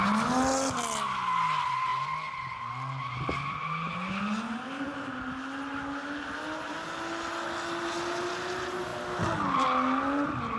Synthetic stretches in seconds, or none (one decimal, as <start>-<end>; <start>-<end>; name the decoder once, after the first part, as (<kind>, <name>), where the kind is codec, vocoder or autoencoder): none